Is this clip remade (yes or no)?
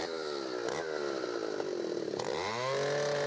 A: no